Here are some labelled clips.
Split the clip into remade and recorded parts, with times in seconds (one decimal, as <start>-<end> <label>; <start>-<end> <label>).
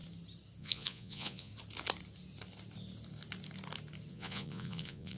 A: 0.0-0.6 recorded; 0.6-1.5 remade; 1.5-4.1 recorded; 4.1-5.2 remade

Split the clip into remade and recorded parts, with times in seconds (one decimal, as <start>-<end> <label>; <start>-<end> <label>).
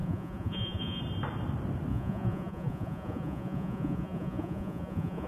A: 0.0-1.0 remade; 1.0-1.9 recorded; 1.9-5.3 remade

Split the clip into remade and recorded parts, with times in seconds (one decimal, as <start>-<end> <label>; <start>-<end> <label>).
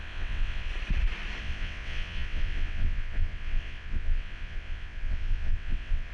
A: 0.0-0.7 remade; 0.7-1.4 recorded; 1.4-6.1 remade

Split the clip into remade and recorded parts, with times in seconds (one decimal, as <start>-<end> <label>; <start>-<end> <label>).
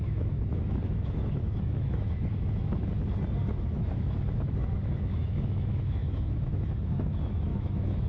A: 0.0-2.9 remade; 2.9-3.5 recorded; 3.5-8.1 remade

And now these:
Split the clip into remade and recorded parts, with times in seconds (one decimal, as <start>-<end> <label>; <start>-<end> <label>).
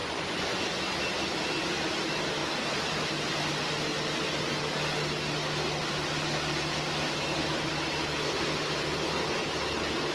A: 0.0-0.6 remade; 0.6-10.1 recorded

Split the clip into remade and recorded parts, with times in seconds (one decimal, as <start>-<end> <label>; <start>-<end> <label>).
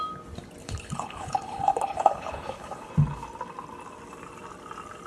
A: 0.0-0.6 recorded; 0.6-2.9 remade; 2.9-5.1 recorded